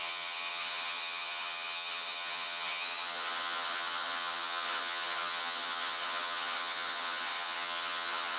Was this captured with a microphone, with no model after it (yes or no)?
no